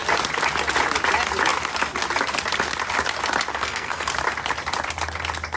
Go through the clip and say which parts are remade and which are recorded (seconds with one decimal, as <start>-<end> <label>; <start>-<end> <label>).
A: 0.0-3.5 recorded; 3.5-4.1 remade; 4.1-5.6 recorded